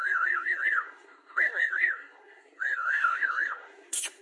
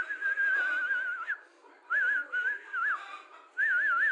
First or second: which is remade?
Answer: first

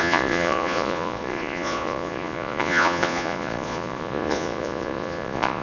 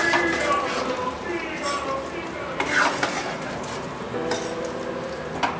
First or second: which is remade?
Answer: first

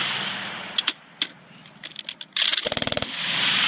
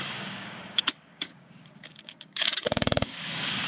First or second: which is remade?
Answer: second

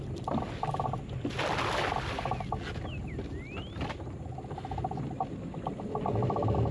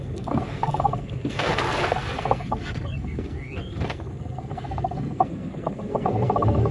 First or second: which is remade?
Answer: second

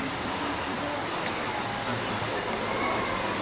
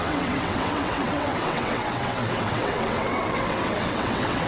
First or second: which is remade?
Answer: second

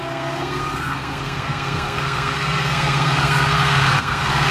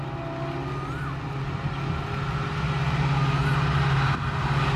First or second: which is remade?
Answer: first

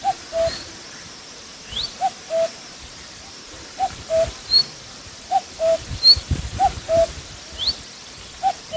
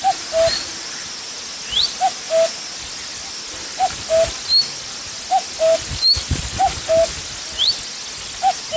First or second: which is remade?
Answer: first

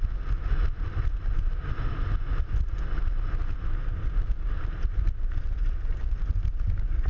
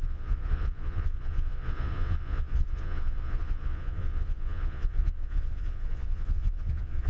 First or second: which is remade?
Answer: second